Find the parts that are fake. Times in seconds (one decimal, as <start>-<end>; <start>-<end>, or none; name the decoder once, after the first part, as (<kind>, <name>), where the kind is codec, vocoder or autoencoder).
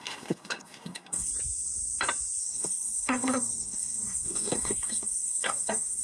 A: 0.0-1.3 (codec, SNAC); 2.4-6.0